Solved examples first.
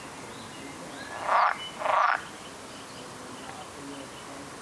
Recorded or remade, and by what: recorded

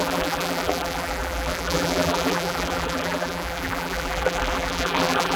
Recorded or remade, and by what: remade, vocoder, BigVGAN v2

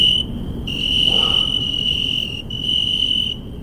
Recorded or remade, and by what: remade, vocoder, BigVGAN v2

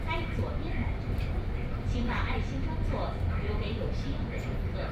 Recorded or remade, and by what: remade, vocoder, BigVGAN v2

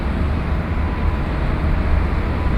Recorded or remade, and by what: recorded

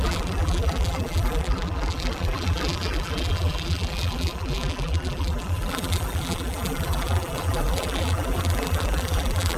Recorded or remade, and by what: remade, vocoder, BigVGAN v2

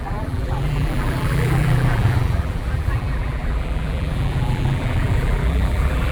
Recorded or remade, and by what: remade, vocoder, BigVGAN v2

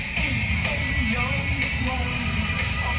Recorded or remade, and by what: remade, vocoder, BigVGAN v2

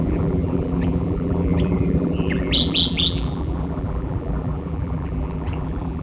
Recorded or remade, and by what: remade, vocoder, BigVGAN v2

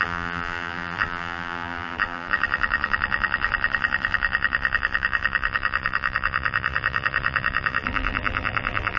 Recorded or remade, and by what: remade, vocoder, BigVGAN v2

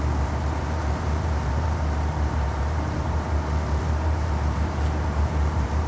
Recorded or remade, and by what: remade, vocoder, BigVGAN v2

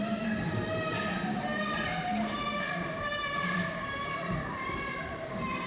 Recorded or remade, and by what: remade, vocoder, BigVGAN v2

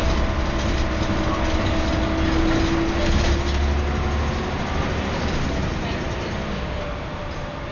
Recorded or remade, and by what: recorded